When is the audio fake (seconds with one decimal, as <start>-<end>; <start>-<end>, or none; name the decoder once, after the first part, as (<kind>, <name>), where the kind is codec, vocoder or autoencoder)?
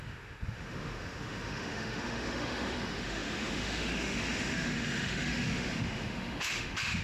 0.0-7.0 (autoencoder, DAC-VAE)